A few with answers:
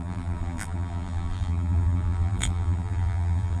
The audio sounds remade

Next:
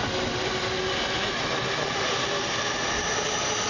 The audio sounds recorded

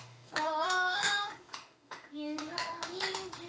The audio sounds remade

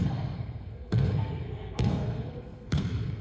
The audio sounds remade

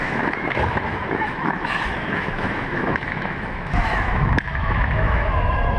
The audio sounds remade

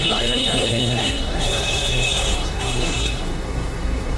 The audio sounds remade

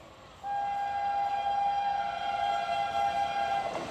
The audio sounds recorded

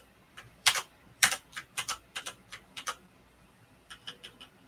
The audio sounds remade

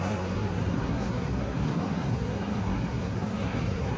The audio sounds remade